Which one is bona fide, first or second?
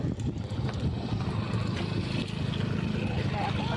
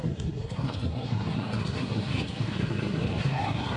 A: first